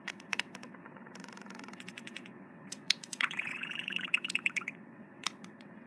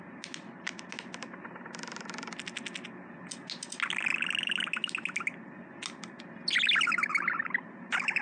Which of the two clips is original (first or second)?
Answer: second